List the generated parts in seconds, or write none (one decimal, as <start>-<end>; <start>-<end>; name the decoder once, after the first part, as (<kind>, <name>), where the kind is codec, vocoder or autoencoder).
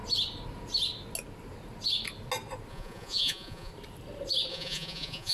2.7-3.7 (vocoder, Vocos); 4.5-5.3